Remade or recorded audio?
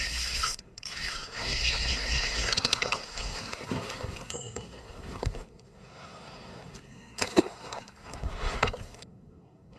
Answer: remade